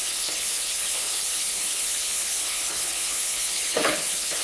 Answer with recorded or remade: remade